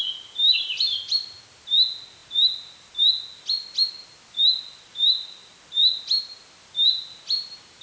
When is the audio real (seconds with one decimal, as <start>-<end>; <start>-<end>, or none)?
0.0-0.4; 1.0-6.6